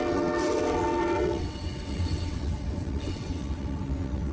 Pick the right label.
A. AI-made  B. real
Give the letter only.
A